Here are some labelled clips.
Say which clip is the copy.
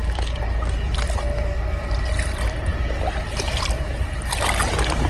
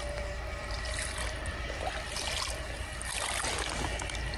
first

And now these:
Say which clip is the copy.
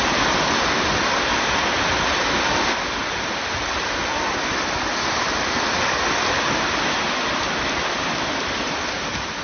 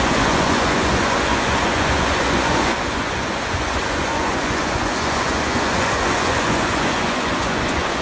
second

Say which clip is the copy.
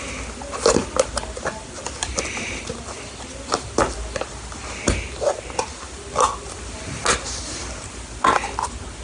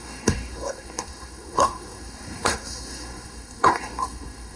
second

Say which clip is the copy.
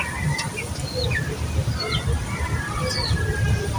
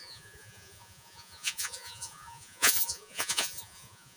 second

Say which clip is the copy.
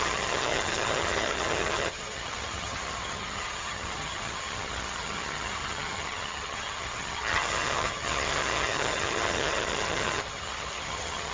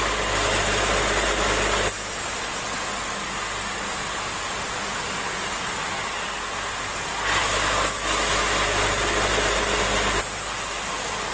first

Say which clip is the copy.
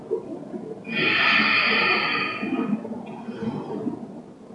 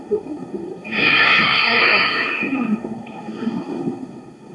second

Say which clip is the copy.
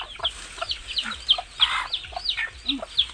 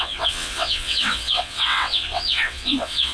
second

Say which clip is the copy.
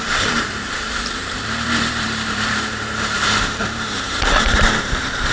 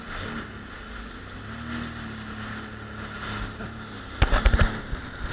first